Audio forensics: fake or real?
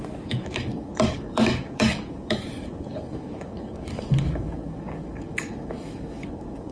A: fake